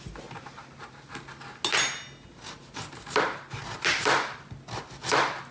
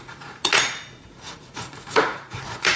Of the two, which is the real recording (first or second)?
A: first